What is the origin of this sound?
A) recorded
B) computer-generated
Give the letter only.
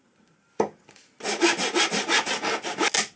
A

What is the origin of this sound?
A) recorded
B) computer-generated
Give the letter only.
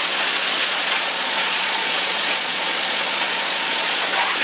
B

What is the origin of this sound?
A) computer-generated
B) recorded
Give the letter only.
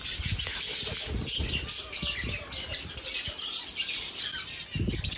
B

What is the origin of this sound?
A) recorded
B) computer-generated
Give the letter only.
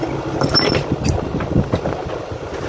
A